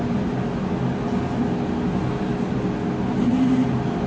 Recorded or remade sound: recorded